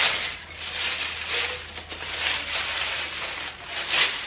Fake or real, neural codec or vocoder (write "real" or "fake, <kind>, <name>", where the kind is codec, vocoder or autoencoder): real